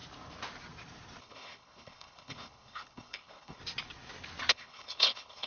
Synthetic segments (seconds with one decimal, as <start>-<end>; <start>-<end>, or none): 1.2-3.6; 4.5-5.5